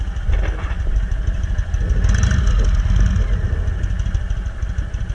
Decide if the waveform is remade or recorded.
recorded